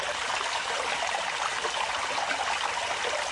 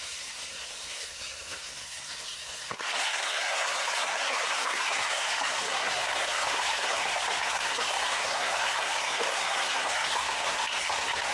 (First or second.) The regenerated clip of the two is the second